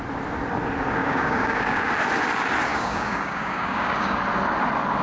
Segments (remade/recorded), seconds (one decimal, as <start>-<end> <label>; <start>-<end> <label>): 0.0-1.0 recorded; 1.0-1.8 remade; 1.8-2.7 recorded; 2.7-4.2 remade; 4.2-5.0 recorded